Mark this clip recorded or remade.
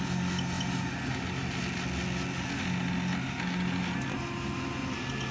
recorded